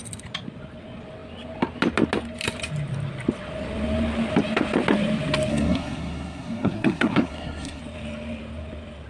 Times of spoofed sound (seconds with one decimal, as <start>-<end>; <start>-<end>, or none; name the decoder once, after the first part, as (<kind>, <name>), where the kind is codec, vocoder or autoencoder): 5.5-7.8 (codec, SNAC)